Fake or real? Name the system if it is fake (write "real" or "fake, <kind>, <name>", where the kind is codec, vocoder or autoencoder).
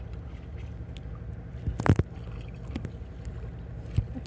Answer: real